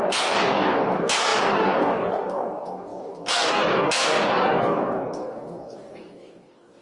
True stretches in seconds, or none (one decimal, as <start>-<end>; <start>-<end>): none